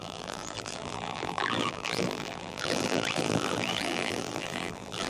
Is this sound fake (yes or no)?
yes